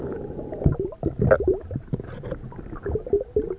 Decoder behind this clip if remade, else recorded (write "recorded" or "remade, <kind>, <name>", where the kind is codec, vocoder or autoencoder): recorded